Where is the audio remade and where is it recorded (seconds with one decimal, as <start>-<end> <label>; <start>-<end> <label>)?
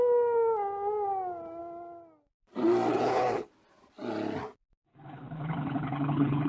0.0-2.9 recorded; 2.9-3.5 remade; 3.5-4.9 recorded; 4.9-6.5 remade